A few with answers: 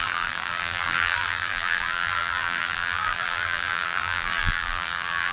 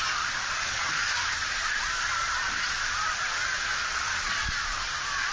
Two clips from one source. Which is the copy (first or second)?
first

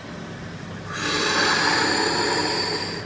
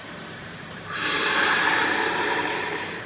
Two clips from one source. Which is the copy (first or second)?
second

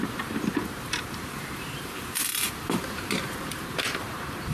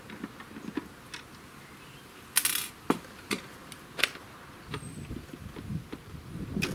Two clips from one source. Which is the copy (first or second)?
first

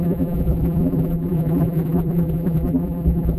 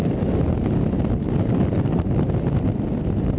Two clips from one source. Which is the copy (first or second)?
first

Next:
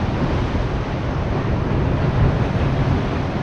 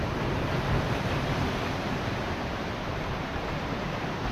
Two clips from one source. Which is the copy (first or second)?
second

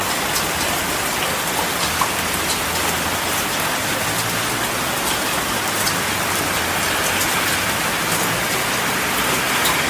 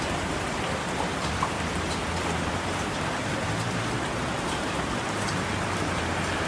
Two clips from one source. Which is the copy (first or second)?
second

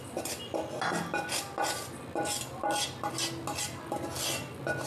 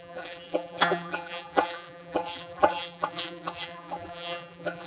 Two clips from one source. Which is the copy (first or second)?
second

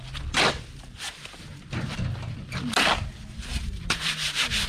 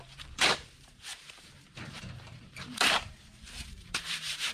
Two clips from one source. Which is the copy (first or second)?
second